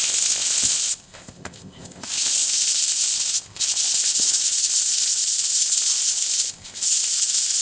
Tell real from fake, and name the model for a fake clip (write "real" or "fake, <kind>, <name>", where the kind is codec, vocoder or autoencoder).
fake, codec, ZipCodec